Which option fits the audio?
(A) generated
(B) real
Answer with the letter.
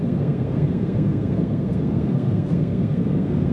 A